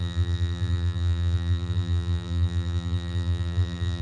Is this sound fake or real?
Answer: fake